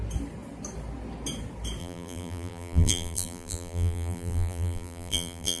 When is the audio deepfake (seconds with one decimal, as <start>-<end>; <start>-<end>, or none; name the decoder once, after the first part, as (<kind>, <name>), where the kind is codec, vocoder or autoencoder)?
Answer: 1.8-5.6 (vocoder, BigVGAN v2)